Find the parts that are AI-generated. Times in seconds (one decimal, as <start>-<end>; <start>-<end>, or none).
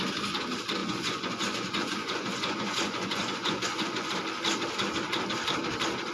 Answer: 0.8-4.1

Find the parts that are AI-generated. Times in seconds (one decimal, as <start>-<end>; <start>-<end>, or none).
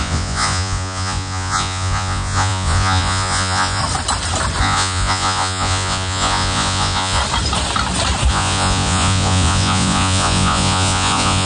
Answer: 0.0-3.8; 4.6-7.2; 8.3-11.5